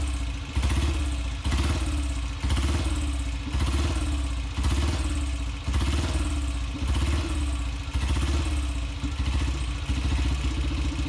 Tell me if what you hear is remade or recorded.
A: recorded